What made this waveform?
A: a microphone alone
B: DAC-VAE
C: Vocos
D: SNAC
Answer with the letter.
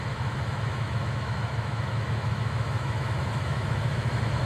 B